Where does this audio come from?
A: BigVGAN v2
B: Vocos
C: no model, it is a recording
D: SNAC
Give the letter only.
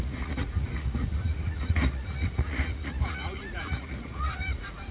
B